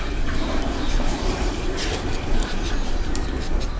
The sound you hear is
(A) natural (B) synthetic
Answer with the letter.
B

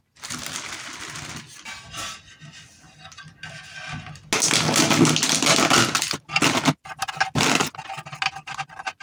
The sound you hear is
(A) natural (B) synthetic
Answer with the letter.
A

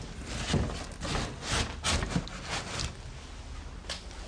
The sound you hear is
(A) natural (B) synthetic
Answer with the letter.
A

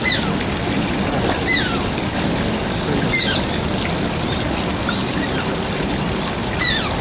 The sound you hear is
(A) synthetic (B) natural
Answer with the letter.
B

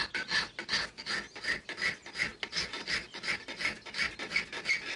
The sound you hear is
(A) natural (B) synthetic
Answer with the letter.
A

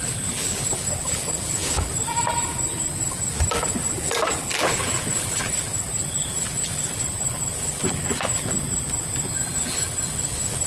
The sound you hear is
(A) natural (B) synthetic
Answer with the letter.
B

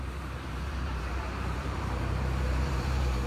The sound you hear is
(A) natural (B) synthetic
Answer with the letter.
B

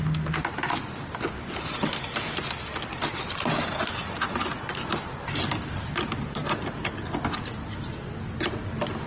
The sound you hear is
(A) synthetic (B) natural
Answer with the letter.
B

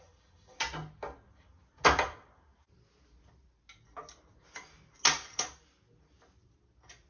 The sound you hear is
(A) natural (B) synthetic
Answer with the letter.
A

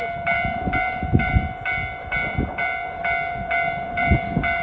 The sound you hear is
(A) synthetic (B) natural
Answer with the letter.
A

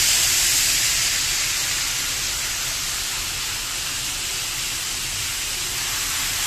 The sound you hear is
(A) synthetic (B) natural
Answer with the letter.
B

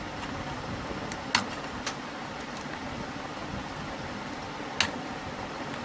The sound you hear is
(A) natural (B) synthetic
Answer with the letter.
A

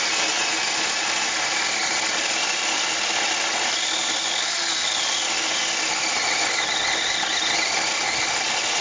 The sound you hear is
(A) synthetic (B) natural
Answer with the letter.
B